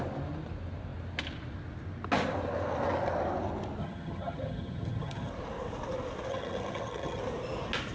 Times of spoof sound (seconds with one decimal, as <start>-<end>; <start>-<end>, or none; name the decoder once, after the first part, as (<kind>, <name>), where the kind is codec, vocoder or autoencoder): 3.8-5.3 (vocoder, HiFi-GAN); 6.3-7.2